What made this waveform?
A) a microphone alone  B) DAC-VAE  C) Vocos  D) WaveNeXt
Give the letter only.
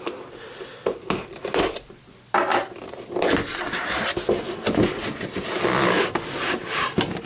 A